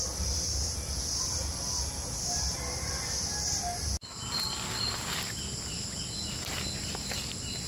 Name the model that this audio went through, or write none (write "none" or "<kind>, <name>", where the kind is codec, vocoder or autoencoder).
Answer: none